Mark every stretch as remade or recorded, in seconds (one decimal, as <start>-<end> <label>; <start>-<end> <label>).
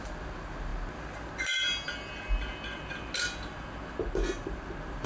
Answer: 0.0-5.1 recorded